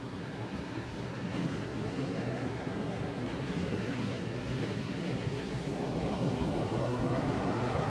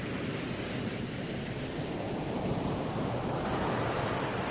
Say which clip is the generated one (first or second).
first